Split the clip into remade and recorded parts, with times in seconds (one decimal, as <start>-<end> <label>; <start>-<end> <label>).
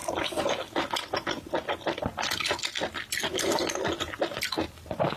0.0-5.2 recorded